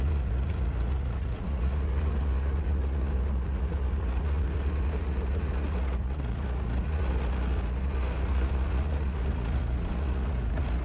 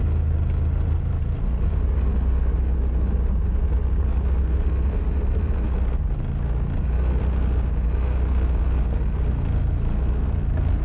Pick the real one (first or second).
second